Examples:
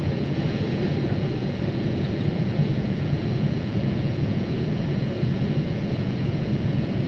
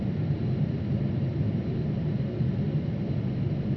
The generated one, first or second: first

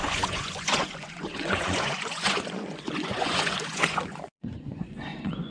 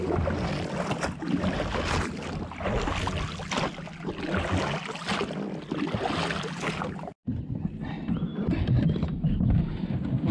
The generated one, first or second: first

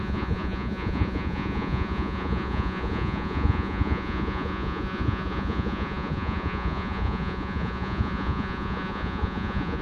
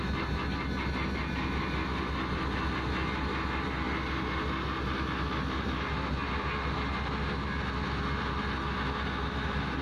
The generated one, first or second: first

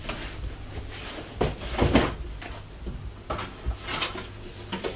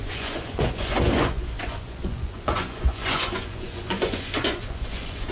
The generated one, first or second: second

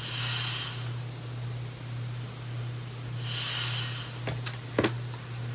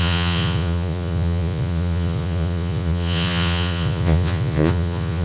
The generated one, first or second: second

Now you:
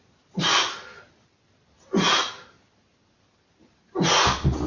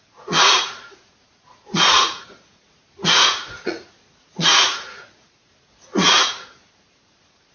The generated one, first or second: second